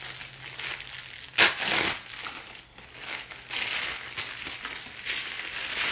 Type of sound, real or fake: real